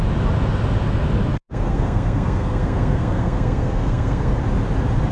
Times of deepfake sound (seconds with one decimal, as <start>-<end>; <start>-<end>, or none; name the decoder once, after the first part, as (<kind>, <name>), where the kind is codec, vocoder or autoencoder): 1.3-4.4 (codec, SNAC)